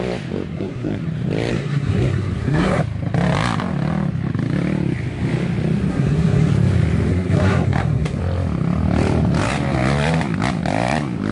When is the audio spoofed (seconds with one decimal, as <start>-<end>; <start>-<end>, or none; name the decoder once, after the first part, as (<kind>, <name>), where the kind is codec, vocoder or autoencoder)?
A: 0.5-1.1 (codec, SNAC); 1.5-2.8; 5.9-6.5; 7.1-8.2